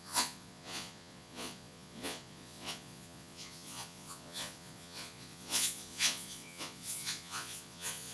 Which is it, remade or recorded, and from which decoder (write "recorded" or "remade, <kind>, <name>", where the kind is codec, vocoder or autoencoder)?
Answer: remade, vocoder, Vocos